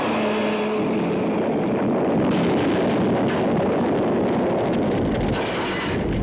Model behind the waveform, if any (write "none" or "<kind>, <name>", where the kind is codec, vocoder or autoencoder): none